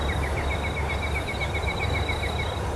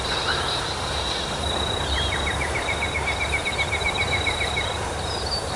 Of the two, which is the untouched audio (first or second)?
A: first